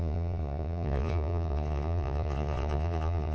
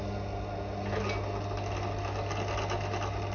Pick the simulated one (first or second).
first